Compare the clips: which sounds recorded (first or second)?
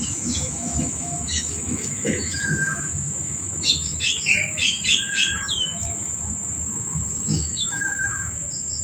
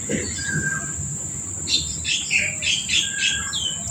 second